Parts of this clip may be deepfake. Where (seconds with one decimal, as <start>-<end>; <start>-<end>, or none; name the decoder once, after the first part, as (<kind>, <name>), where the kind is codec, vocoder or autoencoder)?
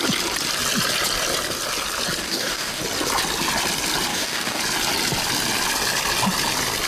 2.2-2.8 (codec, DAC); 4.1-4.6